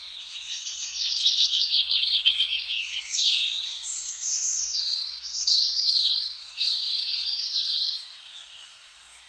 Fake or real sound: fake